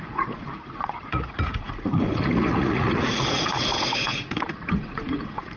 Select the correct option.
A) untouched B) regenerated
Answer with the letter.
B